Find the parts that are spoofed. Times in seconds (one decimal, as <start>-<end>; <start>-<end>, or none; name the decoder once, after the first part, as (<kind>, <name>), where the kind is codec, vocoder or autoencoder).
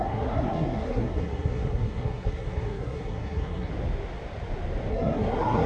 0.0-3.7 (codec, SNAC); 4.9-5.7